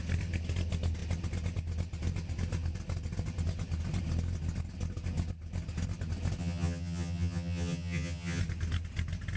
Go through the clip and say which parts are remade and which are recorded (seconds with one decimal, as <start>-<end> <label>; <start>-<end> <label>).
0.0-6.4 recorded; 6.4-8.4 remade; 8.4-9.4 recorded